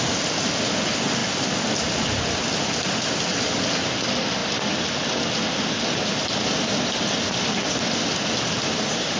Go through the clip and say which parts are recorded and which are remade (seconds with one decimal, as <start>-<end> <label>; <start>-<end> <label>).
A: 0.0-9.2 recorded

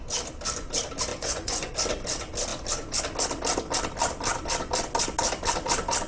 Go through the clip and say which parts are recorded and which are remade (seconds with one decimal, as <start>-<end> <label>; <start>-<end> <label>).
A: 0.0-1.1 recorded; 1.1-1.7 remade; 1.7-6.1 recorded

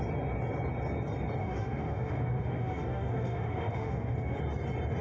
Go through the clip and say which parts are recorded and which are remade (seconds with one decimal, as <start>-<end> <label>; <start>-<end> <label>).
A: 0.0-1.4 recorded; 1.4-4.4 remade; 4.4-5.0 recorded

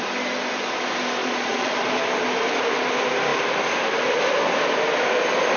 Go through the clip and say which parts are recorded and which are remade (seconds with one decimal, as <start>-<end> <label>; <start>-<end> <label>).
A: 0.0-1.2 recorded; 1.2-1.7 remade; 1.7-5.6 recorded

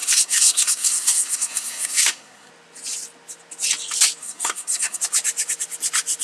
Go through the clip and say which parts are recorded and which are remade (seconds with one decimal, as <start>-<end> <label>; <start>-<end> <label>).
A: 0.0-2.5 remade; 2.5-4.2 recorded; 4.2-5.0 remade; 5.0-6.2 recorded

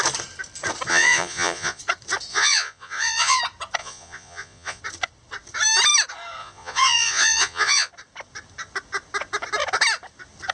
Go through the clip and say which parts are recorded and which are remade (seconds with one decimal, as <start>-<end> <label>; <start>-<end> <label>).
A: 0.0-0.9 recorded; 0.9-1.8 remade; 1.8-2.3 recorded; 2.3-3.4 remade; 3.4-3.8 recorded; 3.8-4.8 remade; 4.8-6.4 recorded; 6.4-7.9 remade; 7.9-10.5 recorded